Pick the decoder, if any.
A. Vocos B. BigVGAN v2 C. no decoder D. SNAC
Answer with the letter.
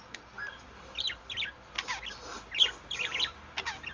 C